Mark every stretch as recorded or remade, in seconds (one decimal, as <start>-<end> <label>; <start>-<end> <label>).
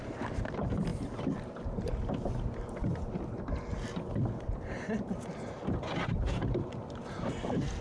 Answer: 0.0-7.8 recorded